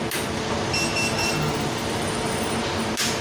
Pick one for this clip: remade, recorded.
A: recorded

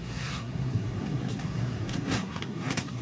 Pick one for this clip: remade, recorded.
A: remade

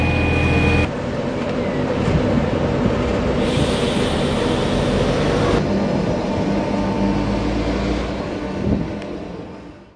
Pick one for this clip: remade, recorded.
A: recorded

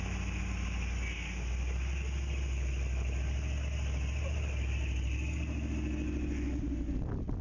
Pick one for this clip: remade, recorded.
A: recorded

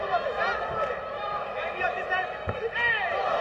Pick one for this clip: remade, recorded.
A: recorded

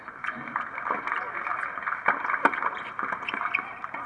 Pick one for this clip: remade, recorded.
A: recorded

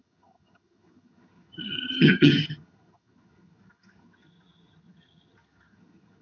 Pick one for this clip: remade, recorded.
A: remade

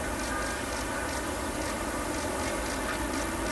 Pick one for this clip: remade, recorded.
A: recorded